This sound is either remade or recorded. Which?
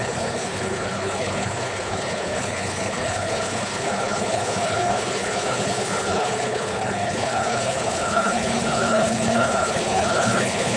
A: remade